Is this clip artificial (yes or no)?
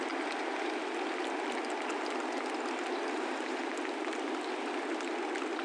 no